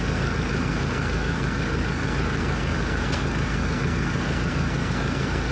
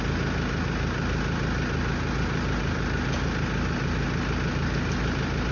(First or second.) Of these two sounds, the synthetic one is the first